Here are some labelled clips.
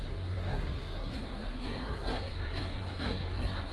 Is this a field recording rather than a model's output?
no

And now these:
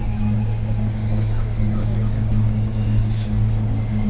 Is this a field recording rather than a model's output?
no